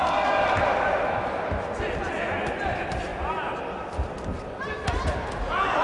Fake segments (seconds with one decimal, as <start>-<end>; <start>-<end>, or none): none